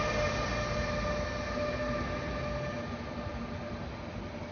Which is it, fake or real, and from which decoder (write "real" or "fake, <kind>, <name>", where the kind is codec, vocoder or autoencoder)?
real